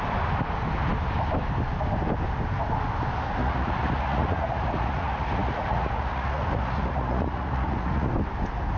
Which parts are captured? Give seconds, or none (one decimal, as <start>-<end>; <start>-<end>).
0.0-3.4; 8.1-8.8